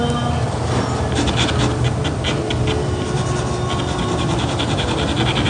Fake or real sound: real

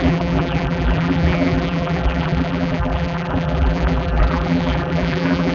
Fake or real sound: fake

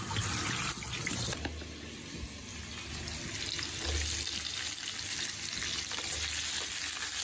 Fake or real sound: real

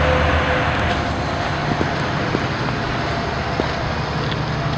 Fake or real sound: real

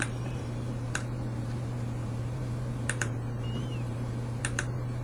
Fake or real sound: fake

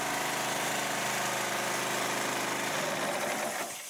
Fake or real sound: real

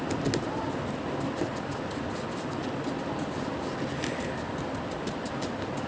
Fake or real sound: real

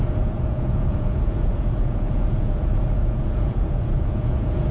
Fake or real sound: fake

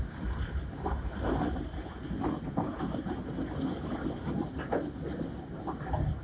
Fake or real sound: real